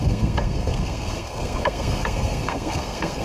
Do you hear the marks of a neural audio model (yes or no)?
yes